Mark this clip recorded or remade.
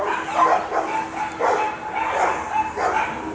recorded